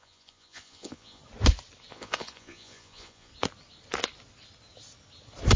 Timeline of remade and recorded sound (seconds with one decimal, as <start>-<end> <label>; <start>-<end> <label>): 0.0-1.2 remade; 1.2-1.9 recorded; 1.9-3.3 remade; 3.3-5.6 recorded

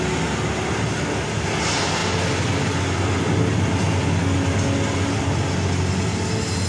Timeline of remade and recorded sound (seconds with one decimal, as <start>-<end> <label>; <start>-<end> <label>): 0.0-6.7 recorded